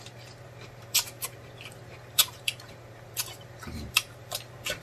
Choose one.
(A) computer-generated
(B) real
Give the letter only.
A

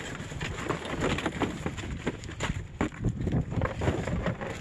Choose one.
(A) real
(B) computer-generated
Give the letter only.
B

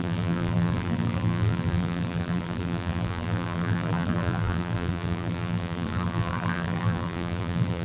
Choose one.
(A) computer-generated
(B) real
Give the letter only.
A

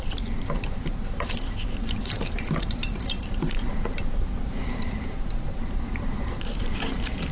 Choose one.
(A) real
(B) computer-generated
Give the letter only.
B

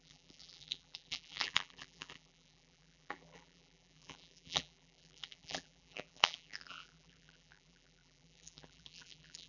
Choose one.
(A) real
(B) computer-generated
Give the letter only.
B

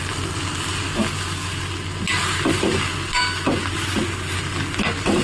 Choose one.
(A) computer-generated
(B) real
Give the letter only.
B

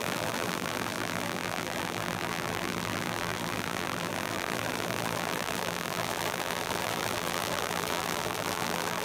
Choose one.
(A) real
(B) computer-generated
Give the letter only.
B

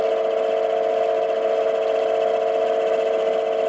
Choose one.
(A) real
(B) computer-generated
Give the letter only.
A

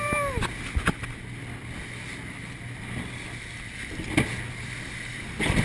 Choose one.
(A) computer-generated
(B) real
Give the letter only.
B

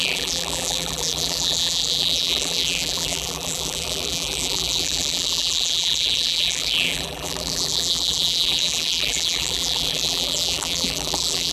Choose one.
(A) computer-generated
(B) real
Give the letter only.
A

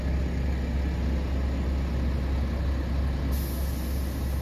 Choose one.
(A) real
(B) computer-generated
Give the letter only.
A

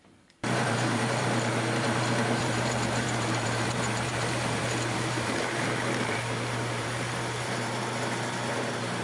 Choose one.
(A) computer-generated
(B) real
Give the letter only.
A